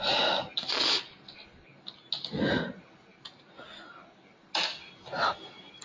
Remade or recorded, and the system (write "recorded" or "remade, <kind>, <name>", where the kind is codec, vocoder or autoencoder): recorded